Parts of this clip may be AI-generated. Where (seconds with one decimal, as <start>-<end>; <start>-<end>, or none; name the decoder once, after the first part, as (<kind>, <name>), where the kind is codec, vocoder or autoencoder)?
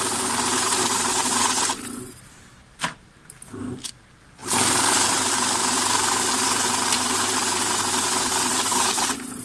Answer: 0.0-3.2 (vocoder, BigVGAN v2); 3.9-9.4